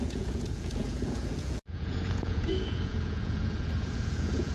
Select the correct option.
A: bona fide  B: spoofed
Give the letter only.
B